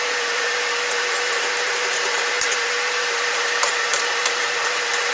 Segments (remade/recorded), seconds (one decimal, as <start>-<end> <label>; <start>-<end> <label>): 0.0-5.1 remade